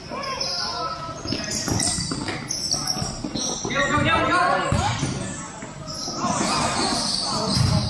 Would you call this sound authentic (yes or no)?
yes